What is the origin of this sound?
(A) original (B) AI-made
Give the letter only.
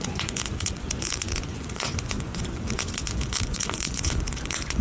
B